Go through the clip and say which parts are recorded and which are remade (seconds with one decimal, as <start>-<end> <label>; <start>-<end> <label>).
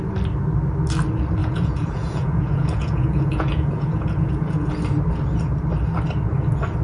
0.0-1.4 recorded; 1.4-4.7 remade; 4.7-6.8 recorded